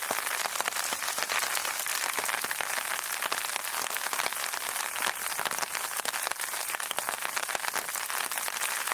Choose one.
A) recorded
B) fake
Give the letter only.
A